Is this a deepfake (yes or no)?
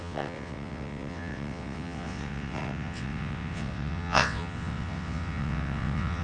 yes